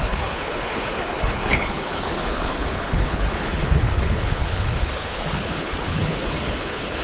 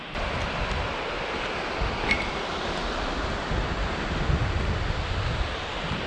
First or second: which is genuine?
second